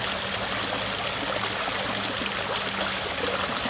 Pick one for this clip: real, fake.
real